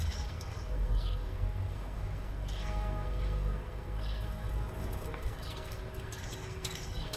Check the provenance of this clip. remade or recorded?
remade